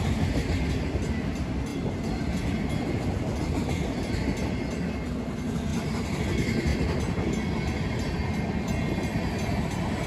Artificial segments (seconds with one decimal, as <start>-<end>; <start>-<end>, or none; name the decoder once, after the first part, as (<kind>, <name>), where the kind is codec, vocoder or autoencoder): 5.7-6.2 (vocoder, BigVGAN v2)